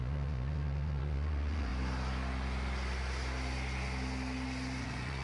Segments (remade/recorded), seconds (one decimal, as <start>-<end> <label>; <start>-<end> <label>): 0.0-1.7 remade; 1.7-4.8 recorded; 4.8-5.2 remade